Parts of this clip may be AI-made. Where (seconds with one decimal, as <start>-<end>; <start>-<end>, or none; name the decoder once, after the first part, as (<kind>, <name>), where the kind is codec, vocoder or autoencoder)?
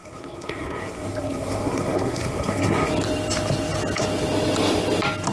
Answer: 0.0-2.9 (codec, SNAC)